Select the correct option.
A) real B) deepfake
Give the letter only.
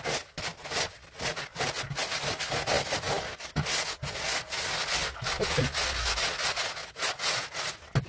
A